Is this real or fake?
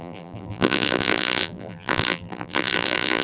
fake